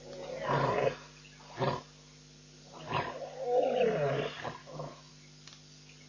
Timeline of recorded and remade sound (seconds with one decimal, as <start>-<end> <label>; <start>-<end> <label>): 0.0-4.6 recorded; 4.6-5.1 remade; 5.1-6.1 recorded